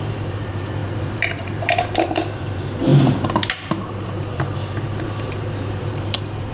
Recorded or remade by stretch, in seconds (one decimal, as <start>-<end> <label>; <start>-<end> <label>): 0.0-6.5 remade